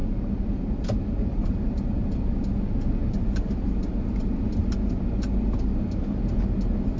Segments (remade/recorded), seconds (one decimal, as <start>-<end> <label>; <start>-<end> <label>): 0.0-7.0 recorded